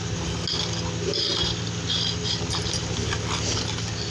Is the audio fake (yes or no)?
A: no